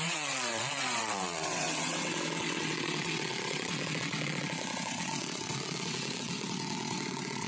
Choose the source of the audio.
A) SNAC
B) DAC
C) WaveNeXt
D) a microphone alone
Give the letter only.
C